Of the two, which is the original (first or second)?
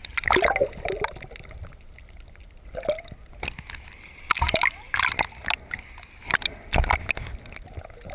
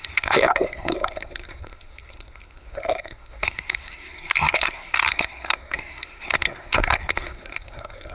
first